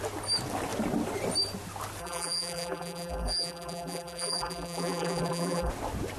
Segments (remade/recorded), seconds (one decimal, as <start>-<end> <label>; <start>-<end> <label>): 0.0-2.0 recorded; 2.0-5.7 remade; 5.7-6.2 recorded